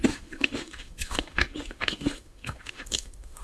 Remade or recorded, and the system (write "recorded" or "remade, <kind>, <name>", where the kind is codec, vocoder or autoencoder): remade, autoencoder, DAC-VAE